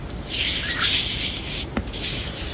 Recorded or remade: recorded